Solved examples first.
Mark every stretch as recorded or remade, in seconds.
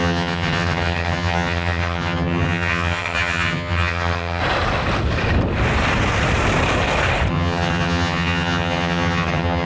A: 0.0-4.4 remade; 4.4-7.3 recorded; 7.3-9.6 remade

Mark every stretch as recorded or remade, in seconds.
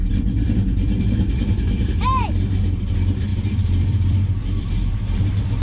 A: 0.0-5.6 remade